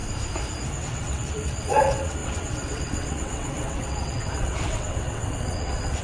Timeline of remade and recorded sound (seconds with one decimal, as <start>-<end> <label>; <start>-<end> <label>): 0.0-0.8 recorded; 0.8-6.0 remade